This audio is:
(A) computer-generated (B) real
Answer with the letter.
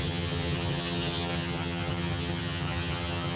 A